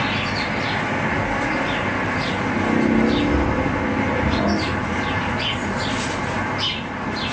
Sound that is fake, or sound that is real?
real